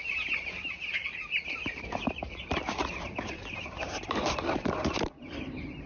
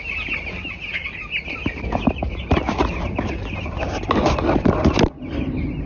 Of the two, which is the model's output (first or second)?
first